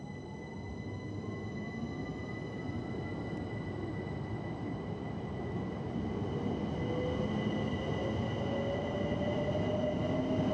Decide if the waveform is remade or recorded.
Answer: recorded